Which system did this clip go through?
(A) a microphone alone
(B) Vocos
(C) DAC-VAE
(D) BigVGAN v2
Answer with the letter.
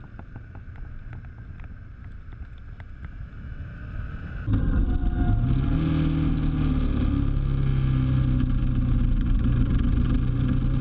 A